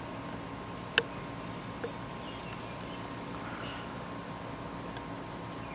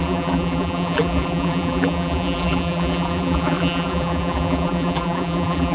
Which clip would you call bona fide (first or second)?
first